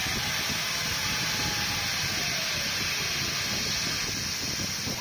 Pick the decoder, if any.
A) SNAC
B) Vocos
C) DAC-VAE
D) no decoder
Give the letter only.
D